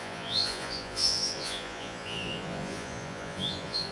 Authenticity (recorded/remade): remade